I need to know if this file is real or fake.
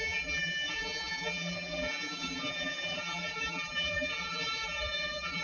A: fake